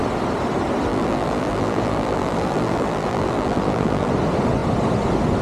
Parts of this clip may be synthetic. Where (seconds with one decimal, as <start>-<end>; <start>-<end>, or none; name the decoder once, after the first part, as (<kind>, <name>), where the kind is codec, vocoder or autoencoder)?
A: 0.9-4.1 (vocoder, BigVGAN v2)